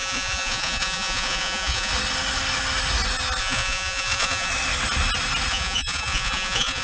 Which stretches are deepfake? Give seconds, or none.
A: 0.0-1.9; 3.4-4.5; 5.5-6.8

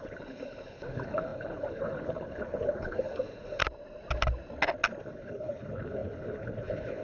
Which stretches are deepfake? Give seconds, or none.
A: 0.0-3.6; 5.0-7.0

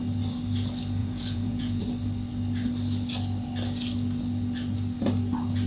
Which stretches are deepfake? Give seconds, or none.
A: 1.0-1.8

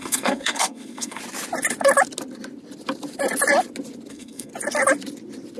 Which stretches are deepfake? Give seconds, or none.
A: 0.0-1.2; 4.1-4.5

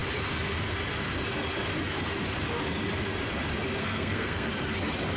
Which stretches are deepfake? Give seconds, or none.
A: 3.8-4.5

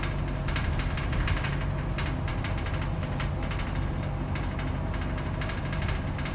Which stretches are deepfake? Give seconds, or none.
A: none